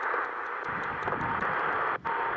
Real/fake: real